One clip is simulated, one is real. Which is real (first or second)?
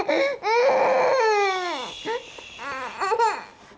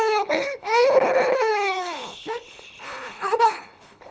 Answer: first